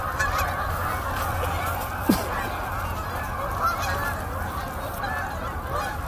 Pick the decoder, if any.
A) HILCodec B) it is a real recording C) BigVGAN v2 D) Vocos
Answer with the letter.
B